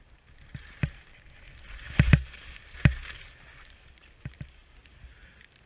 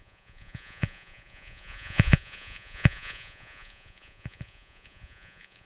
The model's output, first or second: second